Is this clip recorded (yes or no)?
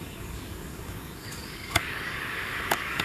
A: no